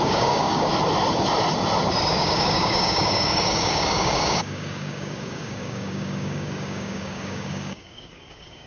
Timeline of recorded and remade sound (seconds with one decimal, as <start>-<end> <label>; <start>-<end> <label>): 0.0-0.7 remade; 0.7-2.1 recorded; 2.1-8.7 remade